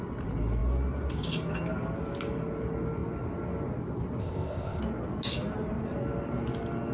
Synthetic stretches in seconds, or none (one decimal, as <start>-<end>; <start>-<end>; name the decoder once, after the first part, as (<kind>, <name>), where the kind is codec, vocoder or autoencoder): 4.2-4.8 (codec, ZipCodec)

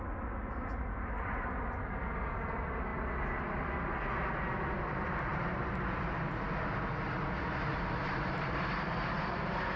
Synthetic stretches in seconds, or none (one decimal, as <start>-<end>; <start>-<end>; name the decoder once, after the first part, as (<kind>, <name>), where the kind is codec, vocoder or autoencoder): 5.3-6.2 (vocoder, BigVGAN v2); 7.7-9.8

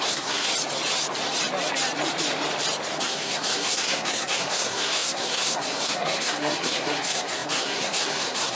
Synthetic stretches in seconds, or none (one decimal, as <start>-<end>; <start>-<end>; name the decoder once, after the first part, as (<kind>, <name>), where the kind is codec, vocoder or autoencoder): 0.0-0.5 (codec, SNAC); 3.0-8.5

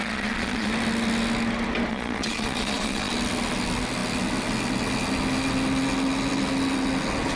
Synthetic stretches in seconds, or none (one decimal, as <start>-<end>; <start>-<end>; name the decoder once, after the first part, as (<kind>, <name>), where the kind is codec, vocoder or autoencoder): 0.0-0.7 (vocoder, Vocos); 1.9-3.1

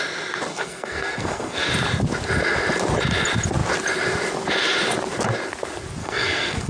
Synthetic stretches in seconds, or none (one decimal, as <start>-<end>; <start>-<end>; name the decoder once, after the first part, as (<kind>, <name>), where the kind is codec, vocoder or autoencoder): 0.5-1.7 (codec, SNAC); 6.0-6.7

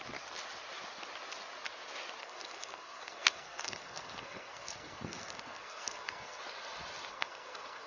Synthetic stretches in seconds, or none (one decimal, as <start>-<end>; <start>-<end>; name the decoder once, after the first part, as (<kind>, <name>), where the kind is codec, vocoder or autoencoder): 2.2-6.4 (codec, SNAC); 7.1-7.9